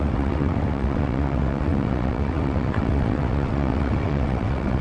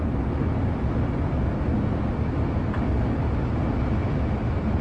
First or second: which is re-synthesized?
first